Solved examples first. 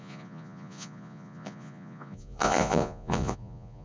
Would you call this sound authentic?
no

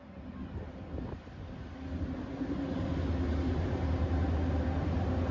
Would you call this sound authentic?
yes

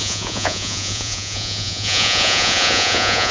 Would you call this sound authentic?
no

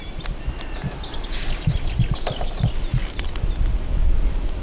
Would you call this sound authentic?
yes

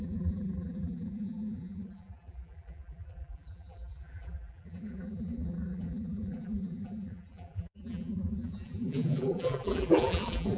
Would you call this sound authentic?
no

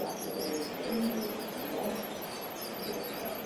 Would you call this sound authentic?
yes